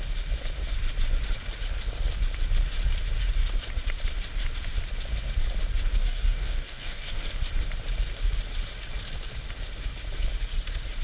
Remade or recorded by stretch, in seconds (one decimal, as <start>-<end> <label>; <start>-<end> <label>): 0.0-5.9 recorded; 5.9-7.3 remade; 7.3-11.0 recorded